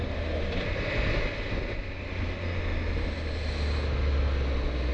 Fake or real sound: real